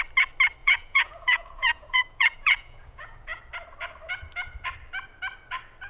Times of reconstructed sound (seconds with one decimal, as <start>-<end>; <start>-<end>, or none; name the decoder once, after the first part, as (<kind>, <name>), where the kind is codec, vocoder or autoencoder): 0.6-3.4 (vocoder, Vocos)